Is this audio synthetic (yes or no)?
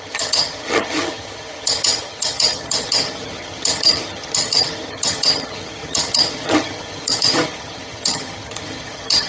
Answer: yes